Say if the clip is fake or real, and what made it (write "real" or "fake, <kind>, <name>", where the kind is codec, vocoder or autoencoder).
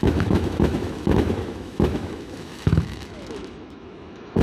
fake, autoencoder, DAC-VAE